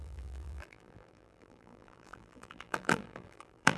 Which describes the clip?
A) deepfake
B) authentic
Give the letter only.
A